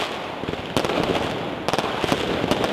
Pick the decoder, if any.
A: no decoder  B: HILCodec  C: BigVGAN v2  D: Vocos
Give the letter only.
A